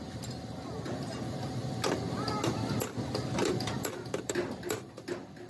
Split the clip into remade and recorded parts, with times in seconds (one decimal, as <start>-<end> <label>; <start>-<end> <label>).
0.0-5.5 recorded